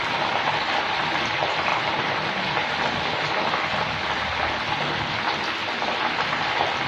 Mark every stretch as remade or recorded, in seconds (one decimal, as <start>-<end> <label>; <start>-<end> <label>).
0.0-1.7 recorded; 1.7-2.4 remade; 2.4-6.9 recorded